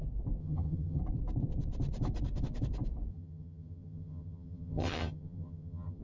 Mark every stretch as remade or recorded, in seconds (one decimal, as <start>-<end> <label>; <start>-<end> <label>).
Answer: 0.0-0.4 recorded; 0.4-1.0 remade; 1.0-3.1 recorded; 3.1-6.0 remade